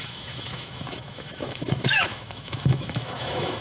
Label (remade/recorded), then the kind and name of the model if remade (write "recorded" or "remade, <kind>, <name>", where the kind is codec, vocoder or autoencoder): remade, autoencoder, DAC-VAE